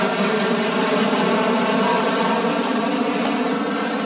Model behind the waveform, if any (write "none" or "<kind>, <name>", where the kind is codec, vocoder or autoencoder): none